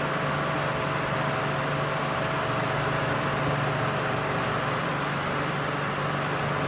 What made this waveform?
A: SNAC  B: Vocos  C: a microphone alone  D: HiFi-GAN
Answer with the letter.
C